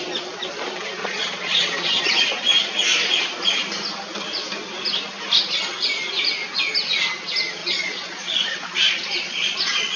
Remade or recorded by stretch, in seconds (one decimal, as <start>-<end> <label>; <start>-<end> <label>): 0.0-1.0 recorded; 1.0-2.0 remade; 2.0-7.6 recorded; 7.6-10.0 remade